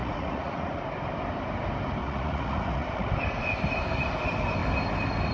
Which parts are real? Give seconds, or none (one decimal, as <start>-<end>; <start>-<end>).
0.8-2.0; 3.1-5.3